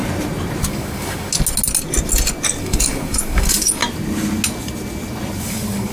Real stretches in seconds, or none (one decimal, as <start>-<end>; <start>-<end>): 0.0-0.6; 1.3-2.6; 3.8-5.4